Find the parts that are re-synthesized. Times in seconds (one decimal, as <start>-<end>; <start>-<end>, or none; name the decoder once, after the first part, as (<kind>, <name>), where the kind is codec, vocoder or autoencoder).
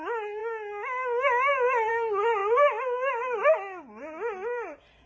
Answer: none